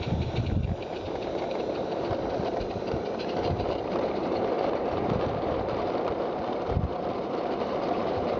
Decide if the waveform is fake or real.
fake